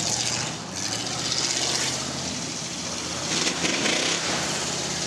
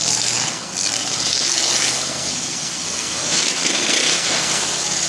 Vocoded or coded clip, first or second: second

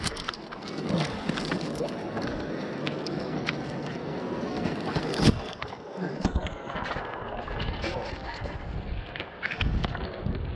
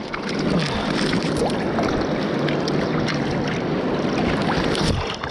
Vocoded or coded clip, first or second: first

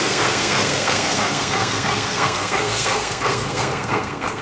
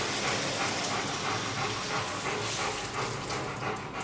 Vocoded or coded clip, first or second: first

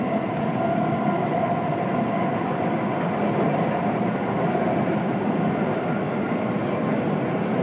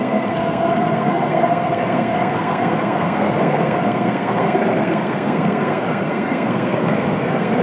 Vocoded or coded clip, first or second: second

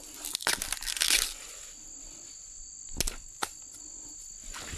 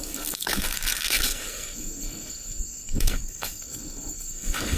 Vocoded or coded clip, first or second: second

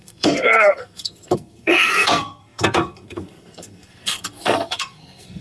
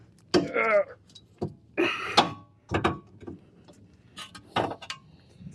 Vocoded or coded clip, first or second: first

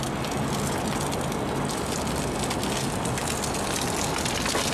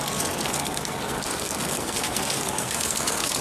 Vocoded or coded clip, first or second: second